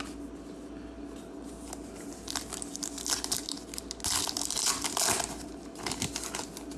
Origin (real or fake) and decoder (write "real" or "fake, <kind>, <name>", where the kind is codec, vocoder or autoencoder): real